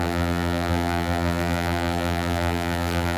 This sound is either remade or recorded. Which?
remade